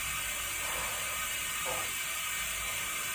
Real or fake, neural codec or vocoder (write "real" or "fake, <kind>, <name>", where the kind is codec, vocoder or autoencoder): fake, vocoder, BigVGAN v2